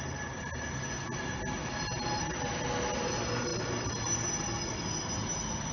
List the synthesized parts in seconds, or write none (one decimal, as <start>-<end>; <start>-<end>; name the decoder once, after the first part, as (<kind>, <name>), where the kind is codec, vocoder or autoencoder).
none